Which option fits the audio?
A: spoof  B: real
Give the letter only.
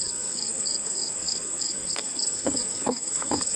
A